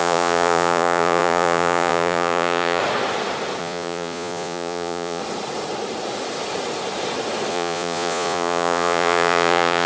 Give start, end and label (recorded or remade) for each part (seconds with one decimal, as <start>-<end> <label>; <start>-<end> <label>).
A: 0.0-2.8 remade; 2.8-3.6 recorded; 3.6-5.2 remade; 5.2-7.5 recorded; 7.5-9.9 remade